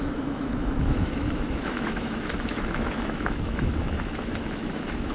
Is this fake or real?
fake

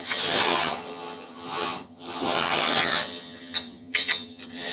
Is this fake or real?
fake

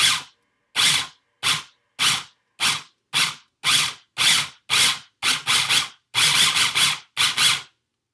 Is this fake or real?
real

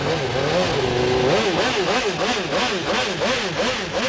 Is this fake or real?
real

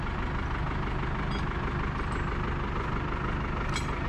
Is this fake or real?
real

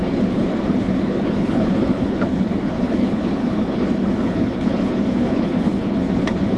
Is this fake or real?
fake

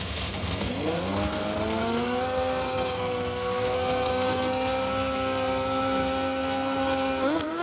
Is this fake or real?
fake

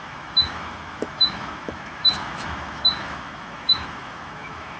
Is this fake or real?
fake